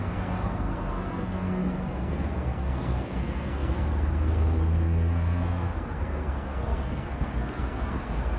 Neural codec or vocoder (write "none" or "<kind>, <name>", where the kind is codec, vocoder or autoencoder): codec, SNAC